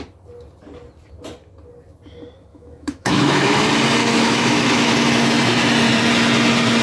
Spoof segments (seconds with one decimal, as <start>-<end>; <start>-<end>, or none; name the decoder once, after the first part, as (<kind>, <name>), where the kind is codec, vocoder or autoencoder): 2.5-3.6 (autoencoder, DAC-VAE); 4.0-4.9